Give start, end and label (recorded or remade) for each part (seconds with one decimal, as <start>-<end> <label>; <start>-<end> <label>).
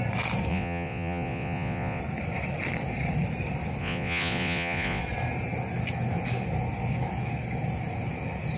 0.0-0.5 recorded; 0.5-2.0 remade; 2.0-3.8 recorded; 3.8-5.0 remade; 5.0-8.6 recorded